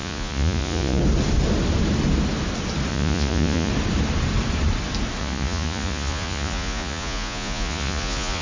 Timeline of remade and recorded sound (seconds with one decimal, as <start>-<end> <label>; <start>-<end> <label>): 0.0-1.0 remade; 1.0-2.9 recorded; 2.9-3.7 remade; 3.7-5.2 recorded; 5.2-8.4 remade